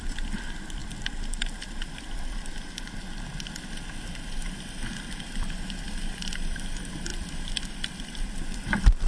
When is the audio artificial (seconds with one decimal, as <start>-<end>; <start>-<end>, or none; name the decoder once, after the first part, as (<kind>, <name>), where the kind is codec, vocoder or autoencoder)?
7.1-7.7 (vocoder, BigVGAN v2)